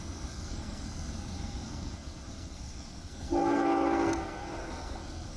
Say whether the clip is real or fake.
fake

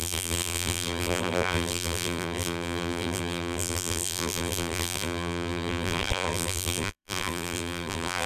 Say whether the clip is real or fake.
fake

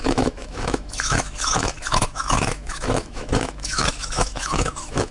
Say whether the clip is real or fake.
fake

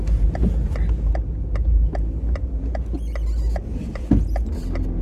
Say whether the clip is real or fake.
real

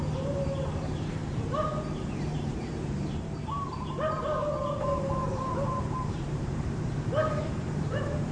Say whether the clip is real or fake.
fake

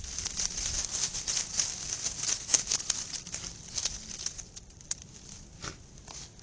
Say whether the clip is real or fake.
real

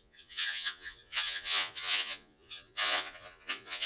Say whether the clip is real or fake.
fake